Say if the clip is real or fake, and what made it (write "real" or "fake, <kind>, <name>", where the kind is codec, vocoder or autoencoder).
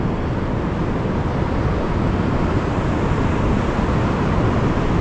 real